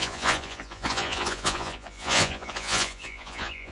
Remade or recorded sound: remade